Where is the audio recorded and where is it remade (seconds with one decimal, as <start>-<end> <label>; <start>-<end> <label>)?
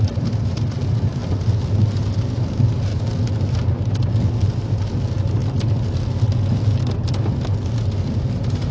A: 0.0-1.2 remade; 1.2-1.7 recorded; 1.7-2.9 remade; 2.9-4.3 recorded; 4.3-5.4 remade; 5.4-8.0 recorded; 8.0-8.7 remade